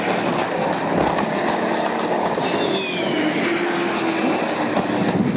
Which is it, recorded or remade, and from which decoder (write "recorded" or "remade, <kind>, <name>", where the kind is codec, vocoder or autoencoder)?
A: recorded